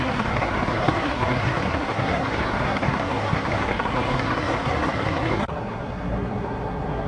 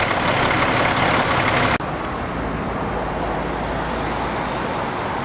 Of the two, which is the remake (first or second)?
first